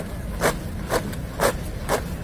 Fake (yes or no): no